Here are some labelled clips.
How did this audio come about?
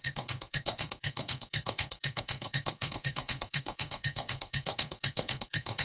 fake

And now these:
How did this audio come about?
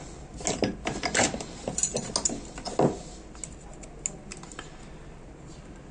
real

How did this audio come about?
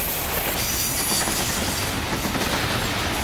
real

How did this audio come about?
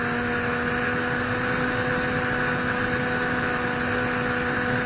real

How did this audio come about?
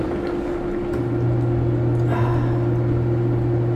real